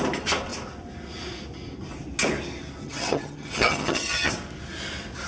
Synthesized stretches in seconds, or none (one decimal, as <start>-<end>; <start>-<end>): 2.8-4.3